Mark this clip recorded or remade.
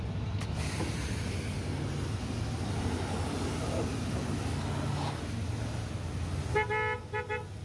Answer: recorded